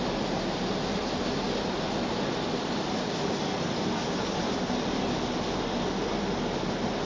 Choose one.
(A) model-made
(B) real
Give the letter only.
B